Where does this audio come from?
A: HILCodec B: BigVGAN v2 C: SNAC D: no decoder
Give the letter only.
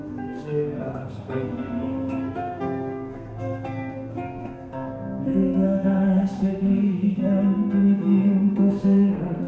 C